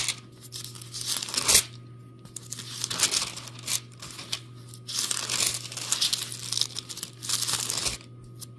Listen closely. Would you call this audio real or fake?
real